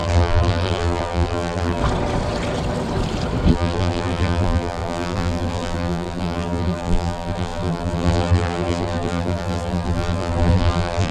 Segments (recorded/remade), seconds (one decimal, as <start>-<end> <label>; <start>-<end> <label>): 0.0-1.8 remade; 1.8-3.5 recorded; 3.5-11.1 remade